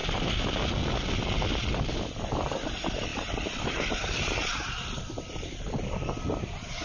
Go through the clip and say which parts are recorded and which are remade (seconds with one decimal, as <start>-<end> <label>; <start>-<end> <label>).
0.0-6.8 recorded